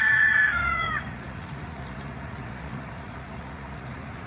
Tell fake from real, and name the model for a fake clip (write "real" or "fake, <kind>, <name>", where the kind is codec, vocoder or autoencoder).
fake, vocoder, Vocos